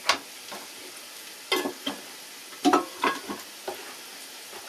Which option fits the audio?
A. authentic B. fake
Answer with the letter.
A